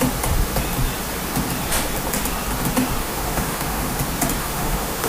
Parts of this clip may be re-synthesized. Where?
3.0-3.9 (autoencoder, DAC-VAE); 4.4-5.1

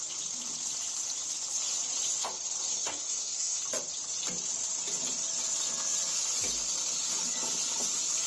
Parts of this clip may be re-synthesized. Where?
2.7-3.6 (codec, SNAC)

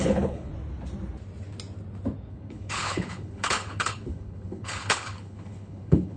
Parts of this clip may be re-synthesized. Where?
0.0-0.5 (codec, HILCodec); 2.3-6.2

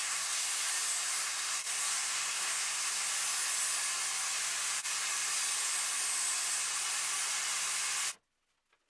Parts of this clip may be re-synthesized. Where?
0.0-0.7 (codec, SNAC); 1.1-3.1